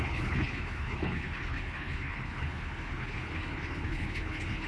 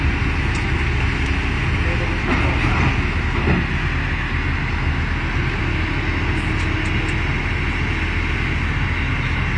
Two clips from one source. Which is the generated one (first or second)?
first